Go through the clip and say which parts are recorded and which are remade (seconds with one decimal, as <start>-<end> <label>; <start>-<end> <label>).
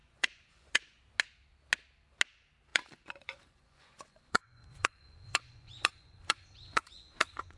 0.0-1.0 remade; 1.0-2.7 recorded; 2.7-7.6 remade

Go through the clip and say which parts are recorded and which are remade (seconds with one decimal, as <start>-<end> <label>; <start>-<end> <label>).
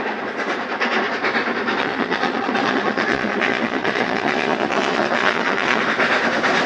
0.0-1.8 recorded; 1.8-5.8 remade; 5.8-6.7 recorded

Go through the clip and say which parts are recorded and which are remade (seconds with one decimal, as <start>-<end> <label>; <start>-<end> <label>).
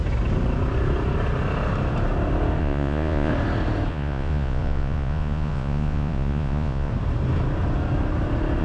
0.0-2.6 recorded; 2.6-3.3 remade; 3.3-3.9 recorded; 3.9-6.9 remade; 6.9-8.6 recorded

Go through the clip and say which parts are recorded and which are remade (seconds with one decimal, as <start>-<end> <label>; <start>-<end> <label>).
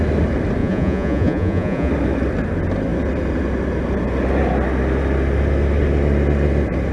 0.0-0.6 recorded; 0.6-1.9 remade; 1.9-6.9 recorded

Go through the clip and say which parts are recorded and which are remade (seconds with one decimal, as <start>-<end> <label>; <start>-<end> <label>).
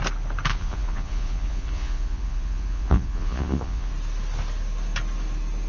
0.0-0.5 recorded; 0.5-3.9 remade; 3.9-5.7 recorded